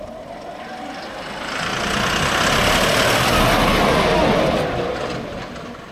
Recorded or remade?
recorded